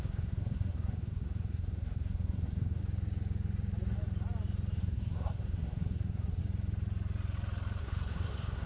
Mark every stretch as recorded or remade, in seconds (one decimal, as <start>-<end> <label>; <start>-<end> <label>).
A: 0.0-2.8 remade; 2.8-4.8 recorded; 4.8-6.4 remade; 6.4-7.8 recorded; 7.8-8.7 remade